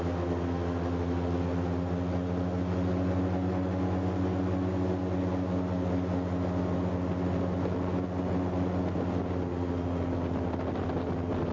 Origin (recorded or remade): recorded